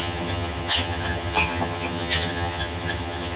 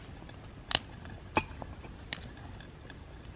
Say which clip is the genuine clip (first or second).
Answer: second